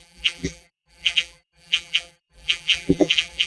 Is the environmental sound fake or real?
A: fake